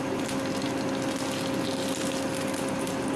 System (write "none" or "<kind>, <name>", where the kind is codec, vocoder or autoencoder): none